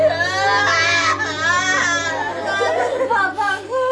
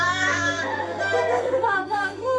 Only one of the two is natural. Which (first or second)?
first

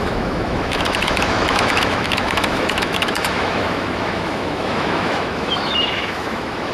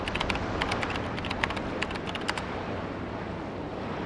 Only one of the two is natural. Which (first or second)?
second